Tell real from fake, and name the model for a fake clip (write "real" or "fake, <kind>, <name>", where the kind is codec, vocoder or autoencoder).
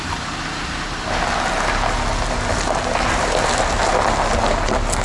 real